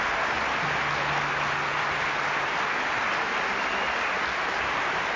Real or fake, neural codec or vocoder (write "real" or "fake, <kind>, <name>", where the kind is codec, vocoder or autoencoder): real